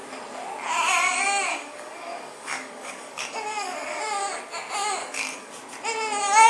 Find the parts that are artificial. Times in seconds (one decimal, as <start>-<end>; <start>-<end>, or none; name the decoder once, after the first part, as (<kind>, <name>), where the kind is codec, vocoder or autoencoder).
1.5-4.0 (codec, DAC); 5.0-5.5